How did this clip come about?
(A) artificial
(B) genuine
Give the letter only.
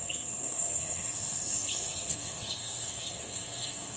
A